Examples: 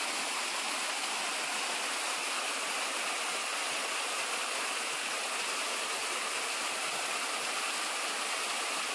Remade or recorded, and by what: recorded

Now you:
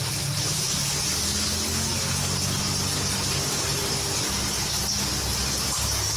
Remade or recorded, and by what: recorded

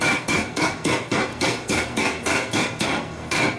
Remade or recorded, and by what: remade, codec, SNAC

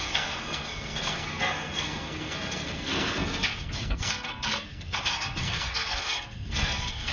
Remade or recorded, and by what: remade, codec, SNAC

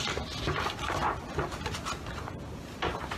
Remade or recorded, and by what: recorded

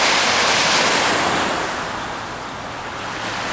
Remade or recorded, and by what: recorded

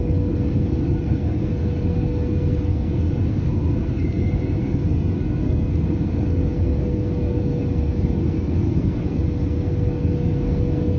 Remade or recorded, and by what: remade, codec, SNAC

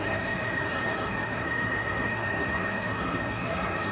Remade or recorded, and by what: remade, codec, SNAC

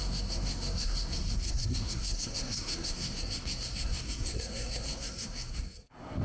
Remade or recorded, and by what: remade, codec, SNAC